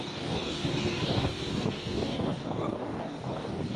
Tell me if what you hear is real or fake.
fake